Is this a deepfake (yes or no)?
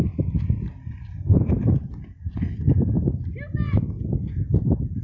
no